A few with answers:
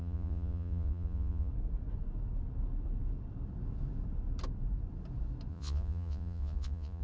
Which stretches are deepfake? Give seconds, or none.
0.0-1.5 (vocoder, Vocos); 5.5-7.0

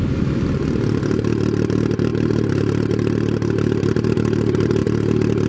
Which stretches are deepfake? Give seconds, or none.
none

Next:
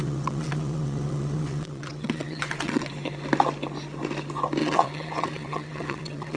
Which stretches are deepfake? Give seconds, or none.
0.0-2.9 (vocoder, WaveNeXt); 4.6-6.4

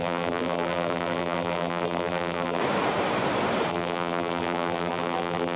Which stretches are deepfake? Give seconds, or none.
0.0-2.6 (vocoder, BigVGAN v2); 3.7-5.6